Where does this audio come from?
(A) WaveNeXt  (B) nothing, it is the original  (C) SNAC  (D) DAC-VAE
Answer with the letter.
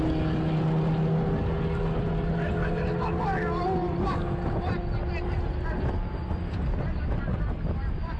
B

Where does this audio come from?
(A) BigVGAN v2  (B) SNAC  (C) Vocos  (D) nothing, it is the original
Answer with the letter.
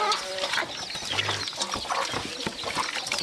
D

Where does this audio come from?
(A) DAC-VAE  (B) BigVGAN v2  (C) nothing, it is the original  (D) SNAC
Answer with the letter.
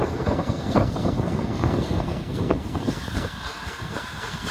D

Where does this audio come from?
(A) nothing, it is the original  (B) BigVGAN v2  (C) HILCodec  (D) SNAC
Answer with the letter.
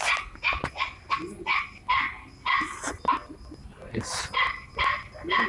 A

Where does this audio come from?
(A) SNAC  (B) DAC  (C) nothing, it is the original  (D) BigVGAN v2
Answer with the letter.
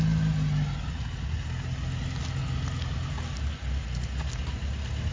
C